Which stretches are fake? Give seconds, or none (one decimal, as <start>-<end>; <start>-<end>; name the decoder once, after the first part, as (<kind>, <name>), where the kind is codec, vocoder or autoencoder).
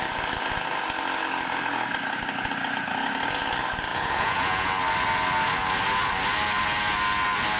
3.9-4.7 (vocoder, Vocos)